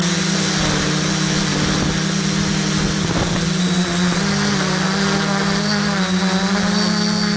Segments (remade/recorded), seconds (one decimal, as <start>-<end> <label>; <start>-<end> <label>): 0.0-7.4 recorded

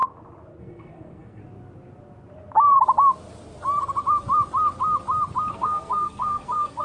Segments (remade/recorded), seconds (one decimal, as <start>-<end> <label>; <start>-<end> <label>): 0.0-0.6 recorded; 0.6-1.4 remade; 1.4-5.5 recorded; 5.5-6.8 remade

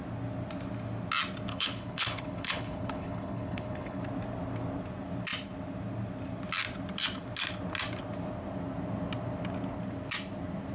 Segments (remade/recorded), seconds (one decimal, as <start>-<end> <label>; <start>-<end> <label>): 0.0-1.5 recorded; 1.5-4.0 remade; 4.0-10.7 recorded

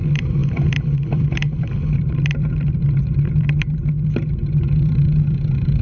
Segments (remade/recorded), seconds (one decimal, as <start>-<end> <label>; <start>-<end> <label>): 0.0-5.8 remade

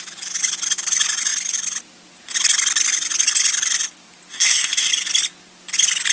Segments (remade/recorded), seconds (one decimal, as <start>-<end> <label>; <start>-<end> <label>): 0.0-4.3 recorded; 4.3-4.9 remade; 4.9-6.1 recorded